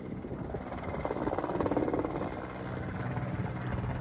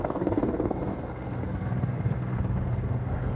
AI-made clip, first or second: second